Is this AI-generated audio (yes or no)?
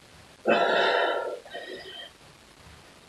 no